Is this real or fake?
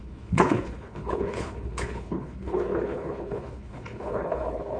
fake